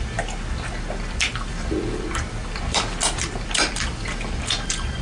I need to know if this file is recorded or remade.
remade